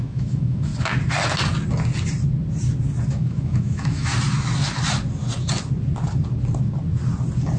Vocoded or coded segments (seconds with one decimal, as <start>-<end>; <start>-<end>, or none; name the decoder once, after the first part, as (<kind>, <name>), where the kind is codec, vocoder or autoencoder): 0.0-0.7 (autoencoder, DAC-VAE); 3.1-4.1